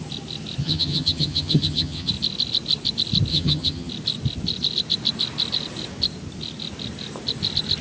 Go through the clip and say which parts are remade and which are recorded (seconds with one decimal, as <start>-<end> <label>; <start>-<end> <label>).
0.0-0.6 recorded; 0.6-2.1 remade; 2.1-3.3 recorded; 3.3-3.9 remade; 3.9-7.8 recorded